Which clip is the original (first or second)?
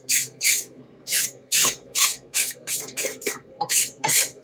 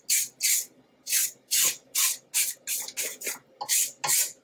second